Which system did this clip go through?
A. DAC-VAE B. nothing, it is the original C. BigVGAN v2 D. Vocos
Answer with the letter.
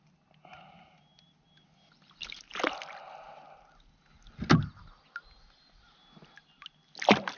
B